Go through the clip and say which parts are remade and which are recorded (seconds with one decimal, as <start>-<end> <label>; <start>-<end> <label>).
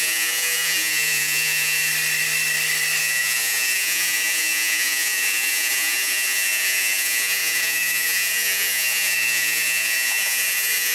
0.0-1.9 remade; 1.9-3.0 recorded; 3.0-10.9 remade